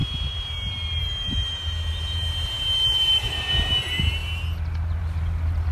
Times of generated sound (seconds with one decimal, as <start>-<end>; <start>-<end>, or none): none